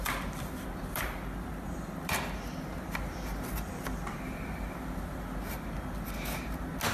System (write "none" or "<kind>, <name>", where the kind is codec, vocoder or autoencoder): none